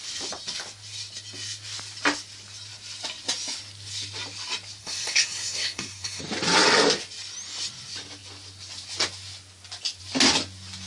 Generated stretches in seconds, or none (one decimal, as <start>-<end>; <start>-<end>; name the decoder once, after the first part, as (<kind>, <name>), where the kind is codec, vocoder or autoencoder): 4.8-6.2 (codec, SNAC)